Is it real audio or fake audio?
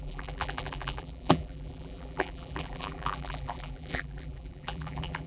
fake